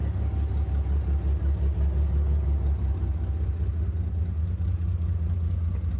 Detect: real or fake real